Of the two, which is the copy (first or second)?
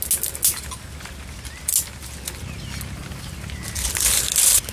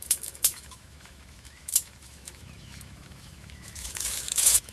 second